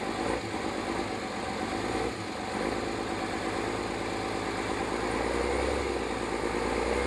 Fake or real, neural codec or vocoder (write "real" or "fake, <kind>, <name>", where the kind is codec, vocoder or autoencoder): real